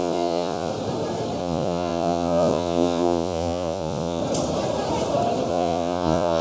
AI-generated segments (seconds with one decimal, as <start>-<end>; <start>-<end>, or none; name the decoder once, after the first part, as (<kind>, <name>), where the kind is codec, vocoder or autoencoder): 0.0-0.7 (vocoder, Vocos); 1.4-4.2; 5.5-6.4

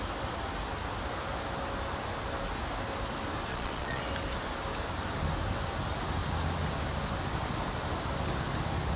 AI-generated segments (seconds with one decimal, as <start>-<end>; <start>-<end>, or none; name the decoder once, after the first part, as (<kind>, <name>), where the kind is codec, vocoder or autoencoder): 3.5-4.0 (vocoder, Vocos)

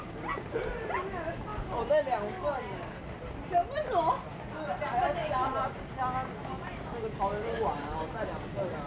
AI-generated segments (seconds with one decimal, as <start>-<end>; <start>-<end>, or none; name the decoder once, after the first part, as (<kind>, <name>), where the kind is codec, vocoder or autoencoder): none

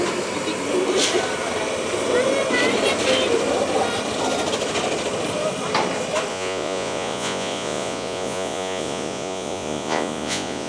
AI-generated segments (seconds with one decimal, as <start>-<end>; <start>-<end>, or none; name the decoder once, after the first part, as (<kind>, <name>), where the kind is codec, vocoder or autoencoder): 6.3-10.7 (vocoder, Vocos)

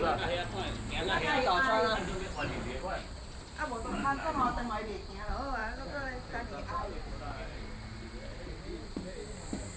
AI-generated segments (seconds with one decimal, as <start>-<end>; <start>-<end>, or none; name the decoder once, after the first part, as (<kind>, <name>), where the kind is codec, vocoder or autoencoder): none

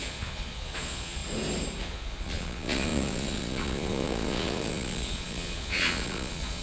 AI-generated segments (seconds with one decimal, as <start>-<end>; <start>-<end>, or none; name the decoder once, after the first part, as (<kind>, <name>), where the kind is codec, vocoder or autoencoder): 0.0-1.2 (vocoder, Vocos); 1.8-6.6

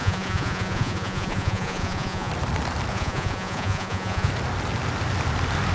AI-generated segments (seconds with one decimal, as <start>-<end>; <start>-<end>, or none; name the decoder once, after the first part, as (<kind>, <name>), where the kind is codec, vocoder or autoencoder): 0.0-2.3 (vocoder, Vocos); 2.9-4.3

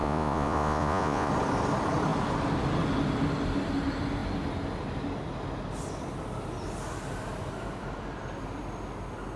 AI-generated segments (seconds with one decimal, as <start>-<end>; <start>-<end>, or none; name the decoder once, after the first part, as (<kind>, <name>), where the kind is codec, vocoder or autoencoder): 0.0-1.3 (vocoder, Vocos)